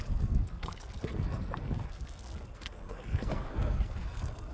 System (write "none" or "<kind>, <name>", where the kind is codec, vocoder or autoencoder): codec, SNAC